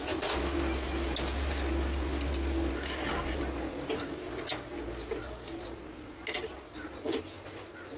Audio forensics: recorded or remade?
recorded